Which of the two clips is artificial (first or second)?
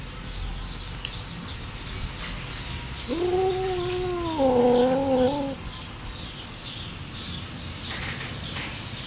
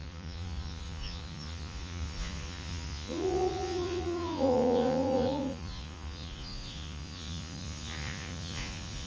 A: second